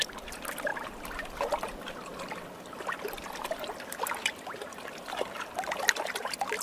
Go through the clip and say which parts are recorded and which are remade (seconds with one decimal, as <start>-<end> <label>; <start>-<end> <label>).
0.0-6.6 recorded